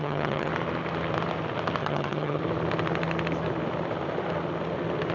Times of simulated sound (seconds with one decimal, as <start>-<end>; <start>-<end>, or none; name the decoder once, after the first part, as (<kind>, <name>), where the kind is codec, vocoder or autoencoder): 0.0-0.5 (vocoder, HiFi-GAN); 1.8-2.4